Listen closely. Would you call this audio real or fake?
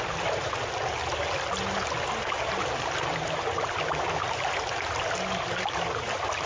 real